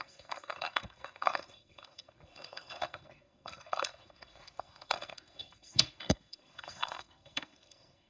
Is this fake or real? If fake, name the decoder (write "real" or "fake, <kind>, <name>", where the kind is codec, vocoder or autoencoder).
fake, codec, SNAC